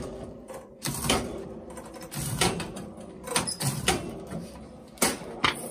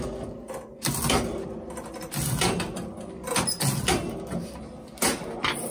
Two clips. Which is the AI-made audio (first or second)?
first